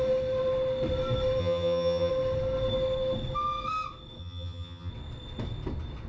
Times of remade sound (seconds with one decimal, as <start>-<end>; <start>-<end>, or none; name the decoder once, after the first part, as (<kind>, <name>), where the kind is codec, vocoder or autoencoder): 1.4-2.1 (vocoder, HiFi-GAN); 4.2-4.9